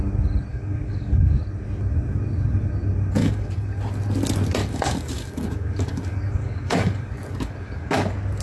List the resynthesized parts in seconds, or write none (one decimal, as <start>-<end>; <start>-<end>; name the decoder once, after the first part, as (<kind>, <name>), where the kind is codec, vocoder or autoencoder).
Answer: 0.5-1.4 (codec, DAC); 3.2-3.8; 4.6-7.9